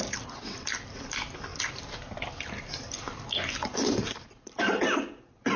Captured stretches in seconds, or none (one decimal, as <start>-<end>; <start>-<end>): none